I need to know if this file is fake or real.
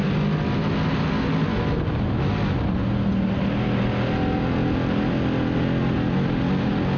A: real